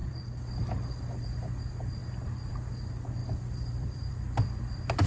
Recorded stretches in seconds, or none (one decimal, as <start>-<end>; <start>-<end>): 1.6-3.2; 4.1-5.1

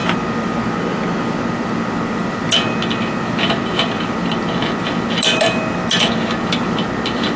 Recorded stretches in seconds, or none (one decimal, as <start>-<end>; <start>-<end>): 0.0-7.4

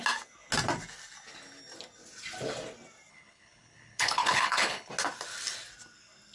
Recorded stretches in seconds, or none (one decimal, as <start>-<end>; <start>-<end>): 0.0-3.1; 4.9-6.3

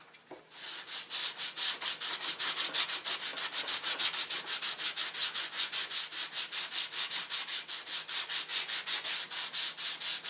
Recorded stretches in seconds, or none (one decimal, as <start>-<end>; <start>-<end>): 0.0-5.2; 6.1-8.5; 9.1-10.3

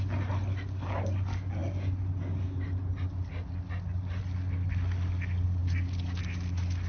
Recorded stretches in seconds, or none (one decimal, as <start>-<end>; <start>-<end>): 0.0-6.9

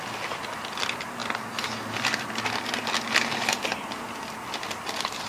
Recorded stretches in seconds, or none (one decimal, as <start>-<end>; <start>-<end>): 0.0-5.3